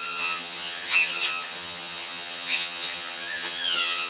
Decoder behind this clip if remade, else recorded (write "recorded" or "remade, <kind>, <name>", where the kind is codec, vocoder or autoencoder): remade, vocoder, HiFi-GAN